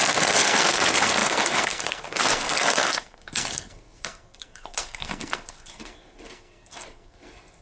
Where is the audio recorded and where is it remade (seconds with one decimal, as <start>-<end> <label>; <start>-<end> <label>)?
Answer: 0.0-7.6 remade